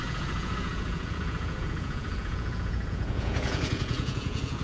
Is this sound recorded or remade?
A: remade